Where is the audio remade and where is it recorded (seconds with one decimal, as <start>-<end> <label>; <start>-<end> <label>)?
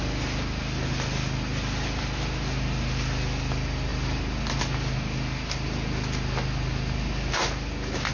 0.0-8.1 recorded